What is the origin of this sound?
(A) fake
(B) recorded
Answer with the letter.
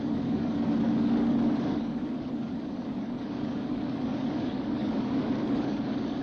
A